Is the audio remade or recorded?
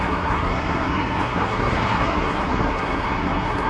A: remade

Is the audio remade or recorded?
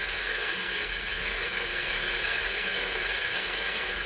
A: remade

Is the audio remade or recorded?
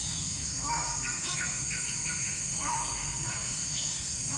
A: remade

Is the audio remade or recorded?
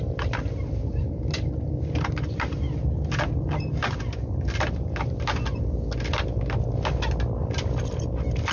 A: recorded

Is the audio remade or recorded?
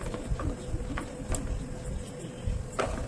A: recorded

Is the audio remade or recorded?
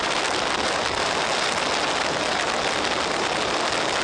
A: recorded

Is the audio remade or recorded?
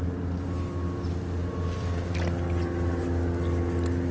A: recorded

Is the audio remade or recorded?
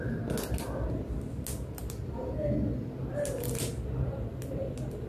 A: recorded